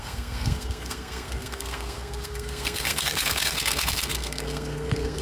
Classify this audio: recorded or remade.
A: remade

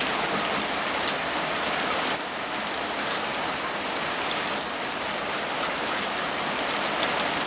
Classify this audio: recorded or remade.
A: recorded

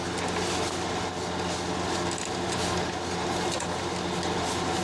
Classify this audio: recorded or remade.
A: recorded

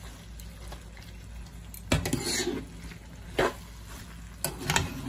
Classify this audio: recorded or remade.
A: recorded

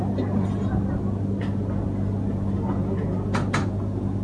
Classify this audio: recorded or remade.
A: recorded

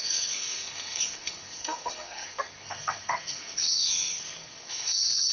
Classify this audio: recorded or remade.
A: remade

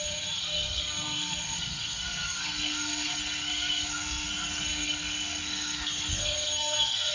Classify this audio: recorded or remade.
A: remade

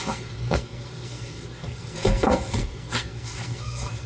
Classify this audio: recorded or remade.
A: remade